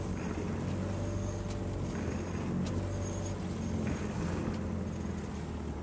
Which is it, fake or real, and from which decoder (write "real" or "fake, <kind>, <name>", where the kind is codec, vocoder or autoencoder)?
real